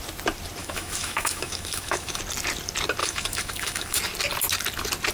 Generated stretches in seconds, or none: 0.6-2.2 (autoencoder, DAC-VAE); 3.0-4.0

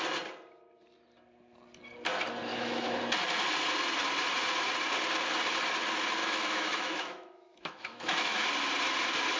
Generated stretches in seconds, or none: 2.5-3.0 (autoencoder, DAC-VAE); 6.2-8.5

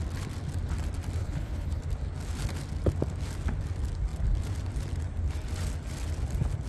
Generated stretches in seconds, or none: 1.2-1.8 (codec, HILCodec)